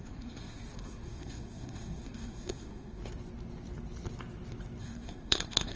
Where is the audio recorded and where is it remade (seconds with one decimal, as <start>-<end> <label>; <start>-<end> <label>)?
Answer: 0.0-3.0 remade; 3.0-4.8 recorded; 4.8-5.8 remade